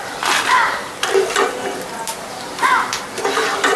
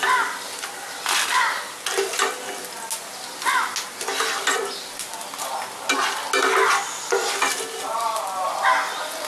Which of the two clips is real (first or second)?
second